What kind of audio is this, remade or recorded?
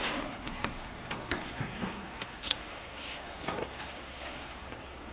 remade